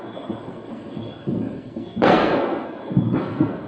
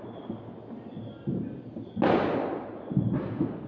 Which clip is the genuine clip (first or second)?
second